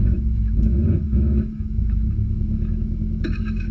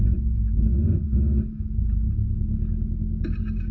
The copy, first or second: first